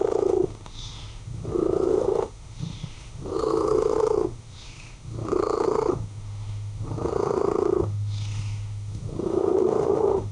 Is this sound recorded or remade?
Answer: remade